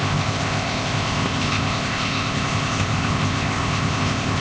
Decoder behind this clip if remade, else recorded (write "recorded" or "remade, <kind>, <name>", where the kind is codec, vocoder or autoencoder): remade, codec, ZipCodec